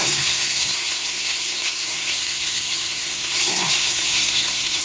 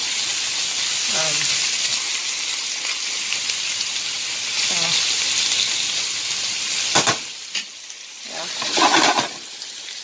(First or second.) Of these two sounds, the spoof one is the first